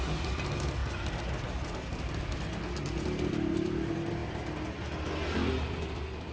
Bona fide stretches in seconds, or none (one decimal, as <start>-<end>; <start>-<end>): 0.0-6.3